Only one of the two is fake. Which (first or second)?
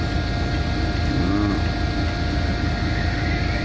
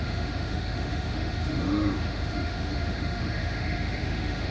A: second